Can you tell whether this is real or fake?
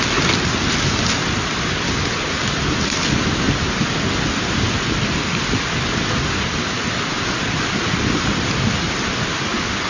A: real